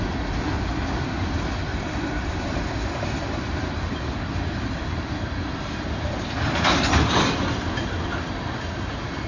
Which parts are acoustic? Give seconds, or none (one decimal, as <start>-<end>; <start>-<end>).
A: 0.0-1.7; 2.7-5.5; 6.1-9.3